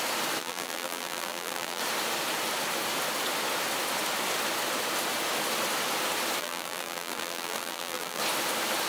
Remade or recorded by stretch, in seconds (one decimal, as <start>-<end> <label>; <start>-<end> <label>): 0.0-0.4 recorded; 0.4-1.8 remade; 1.8-6.4 recorded; 6.4-8.2 remade; 8.2-8.9 recorded